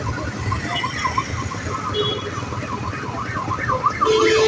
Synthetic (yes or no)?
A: no